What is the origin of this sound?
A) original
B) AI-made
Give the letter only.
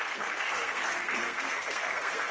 B